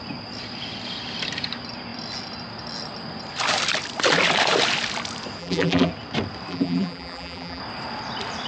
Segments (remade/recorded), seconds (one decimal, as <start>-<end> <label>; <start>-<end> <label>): 0.0-5.4 recorded; 5.4-5.9 remade; 5.9-6.5 recorded; 6.5-7.6 remade; 7.6-8.5 recorded